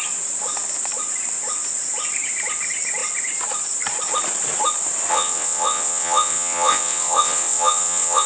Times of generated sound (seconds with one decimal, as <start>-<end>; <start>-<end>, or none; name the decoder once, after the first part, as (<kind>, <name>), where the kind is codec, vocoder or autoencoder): 5.1-8.3 (vocoder, WaveNeXt)